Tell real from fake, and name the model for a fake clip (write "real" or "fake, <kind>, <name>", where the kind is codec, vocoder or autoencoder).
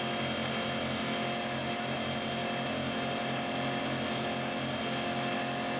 real